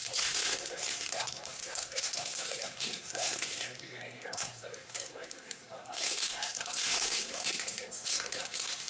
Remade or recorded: remade